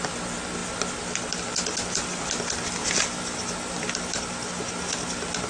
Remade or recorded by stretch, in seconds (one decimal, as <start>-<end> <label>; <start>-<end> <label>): 0.0-2.8 recorded; 2.8-4.5 remade; 4.5-5.5 recorded